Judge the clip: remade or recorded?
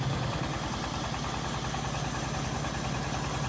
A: recorded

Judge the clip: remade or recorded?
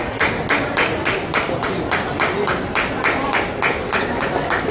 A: recorded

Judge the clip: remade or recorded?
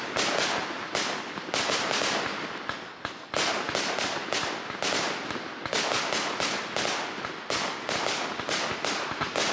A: recorded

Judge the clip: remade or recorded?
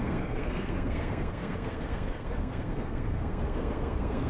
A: remade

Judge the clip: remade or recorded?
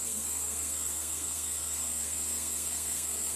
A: remade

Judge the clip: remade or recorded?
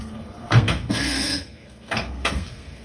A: remade